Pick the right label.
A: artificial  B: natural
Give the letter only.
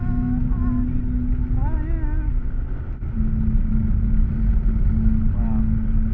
B